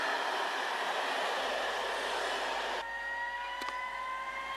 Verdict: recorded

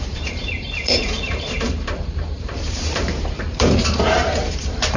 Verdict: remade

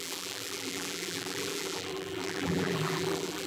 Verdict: remade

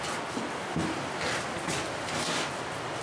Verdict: recorded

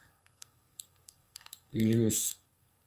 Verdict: remade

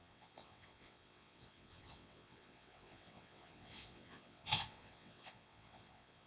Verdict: remade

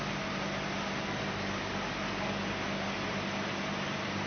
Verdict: recorded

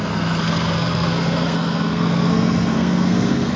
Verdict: remade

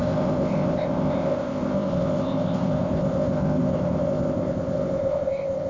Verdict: remade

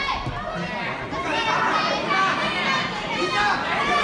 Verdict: recorded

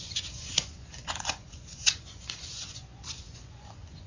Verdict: remade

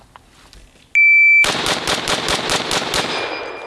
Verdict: recorded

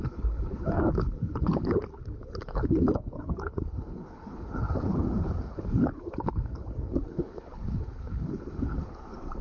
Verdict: remade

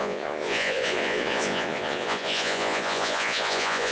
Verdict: remade